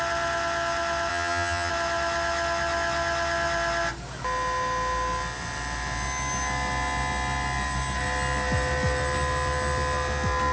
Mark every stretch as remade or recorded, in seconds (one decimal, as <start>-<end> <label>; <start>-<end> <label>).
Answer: 0.0-1.1 recorded; 1.1-1.7 remade; 1.7-10.5 recorded